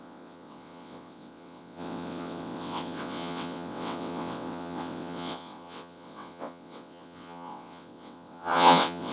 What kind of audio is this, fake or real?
fake